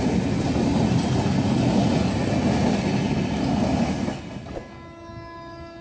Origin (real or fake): real